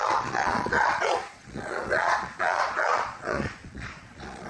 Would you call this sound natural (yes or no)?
no